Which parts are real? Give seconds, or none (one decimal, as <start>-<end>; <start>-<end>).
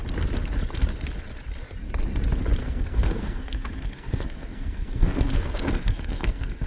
0.0-2.6